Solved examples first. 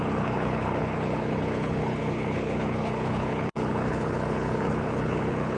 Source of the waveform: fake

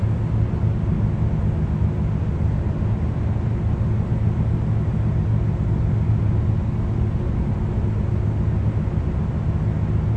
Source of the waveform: real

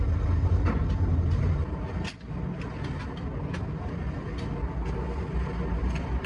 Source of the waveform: real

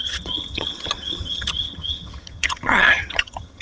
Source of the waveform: fake